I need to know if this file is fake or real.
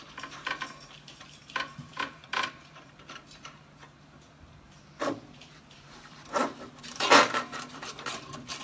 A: fake